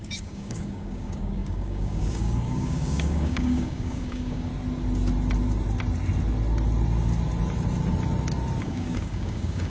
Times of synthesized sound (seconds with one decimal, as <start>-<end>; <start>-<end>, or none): 0.0-4.5; 8.6-9.7